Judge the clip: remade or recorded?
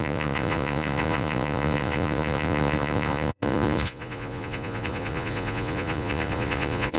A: remade